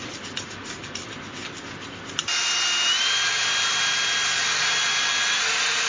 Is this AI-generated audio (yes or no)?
no